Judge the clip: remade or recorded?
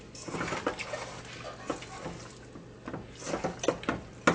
recorded